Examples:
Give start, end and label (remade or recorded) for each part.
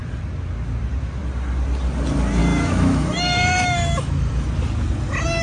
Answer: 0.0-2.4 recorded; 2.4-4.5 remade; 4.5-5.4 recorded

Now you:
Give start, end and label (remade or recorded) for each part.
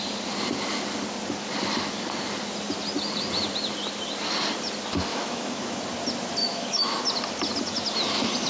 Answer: 0.0-5.1 recorded; 5.1-5.8 remade; 5.8-6.4 recorded; 6.4-7.0 remade; 7.0-8.5 recorded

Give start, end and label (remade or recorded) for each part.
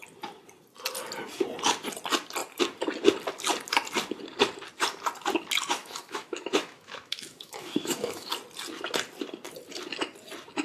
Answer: 0.0-5.8 recorded; 5.8-8.3 remade; 8.3-10.6 recorded